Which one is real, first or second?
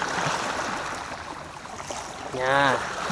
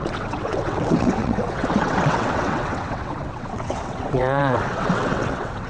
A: first